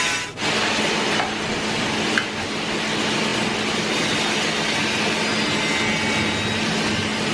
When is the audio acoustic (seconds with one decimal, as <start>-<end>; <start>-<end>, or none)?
0.0-7.3